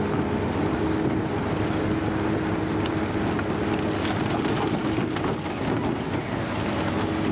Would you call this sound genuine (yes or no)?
yes